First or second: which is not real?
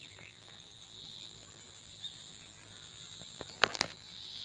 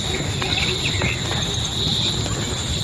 first